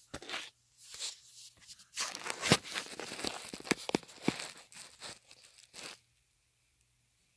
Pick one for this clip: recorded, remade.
recorded